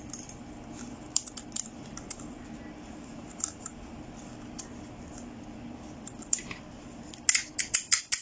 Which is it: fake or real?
real